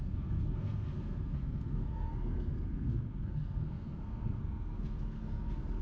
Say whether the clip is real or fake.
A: fake